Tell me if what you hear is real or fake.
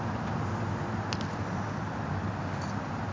real